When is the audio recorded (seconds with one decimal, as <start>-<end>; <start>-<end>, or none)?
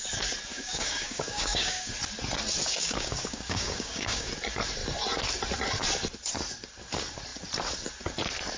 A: 0.0-0.5; 1.9-2.6; 4.3-8.6